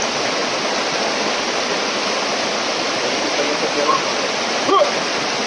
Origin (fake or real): real